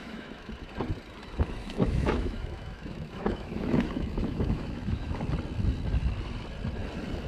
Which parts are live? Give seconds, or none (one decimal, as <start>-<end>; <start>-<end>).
0.5-1.6; 5.2-7.3